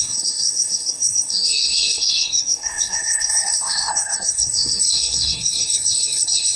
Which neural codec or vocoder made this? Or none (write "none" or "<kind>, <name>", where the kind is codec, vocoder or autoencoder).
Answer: codec, SNAC